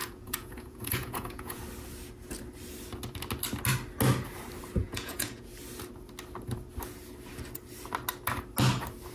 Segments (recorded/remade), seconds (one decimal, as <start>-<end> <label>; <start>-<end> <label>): 0.0-1.6 remade; 1.6-4.8 recorded; 4.8-5.5 remade; 5.5-9.1 recorded